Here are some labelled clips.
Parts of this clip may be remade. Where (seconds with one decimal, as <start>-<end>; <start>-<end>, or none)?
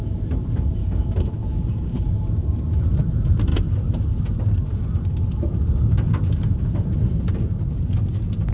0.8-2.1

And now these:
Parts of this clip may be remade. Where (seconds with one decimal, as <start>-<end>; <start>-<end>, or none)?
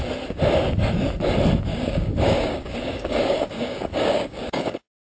1.7-5.0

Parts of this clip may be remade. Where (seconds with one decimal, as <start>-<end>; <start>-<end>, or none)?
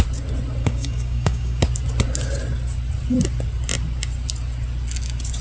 0.6-1.6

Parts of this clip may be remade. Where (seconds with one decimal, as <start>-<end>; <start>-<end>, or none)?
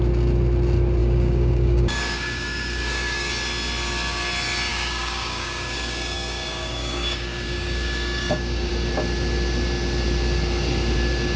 1.0-3.3; 4.7-8.7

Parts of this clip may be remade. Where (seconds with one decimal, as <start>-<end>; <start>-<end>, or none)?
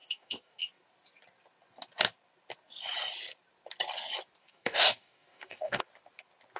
0.0-0.6; 4.4-5.8